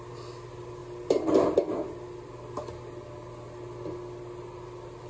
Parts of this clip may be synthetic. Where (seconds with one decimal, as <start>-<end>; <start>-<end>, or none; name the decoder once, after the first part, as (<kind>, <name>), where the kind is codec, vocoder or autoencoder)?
none